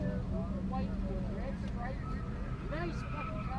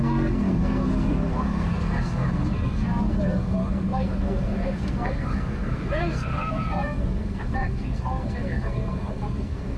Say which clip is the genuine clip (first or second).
first